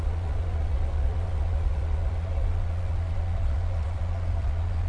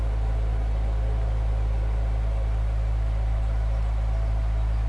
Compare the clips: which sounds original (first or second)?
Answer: second